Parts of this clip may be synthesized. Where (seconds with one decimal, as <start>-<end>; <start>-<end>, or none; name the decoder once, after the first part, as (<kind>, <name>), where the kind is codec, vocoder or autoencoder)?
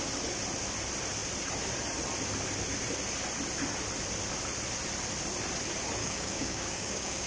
6.0-7.3 (codec, DAC)